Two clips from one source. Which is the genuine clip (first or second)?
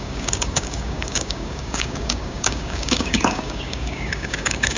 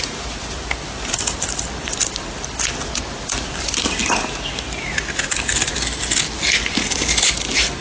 second